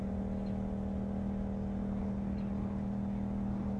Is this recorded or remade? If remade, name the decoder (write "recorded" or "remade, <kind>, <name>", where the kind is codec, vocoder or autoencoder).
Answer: recorded